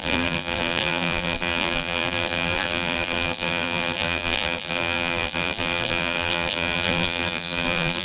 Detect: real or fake fake